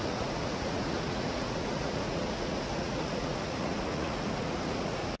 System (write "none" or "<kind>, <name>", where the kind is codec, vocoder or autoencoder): vocoder, Vocos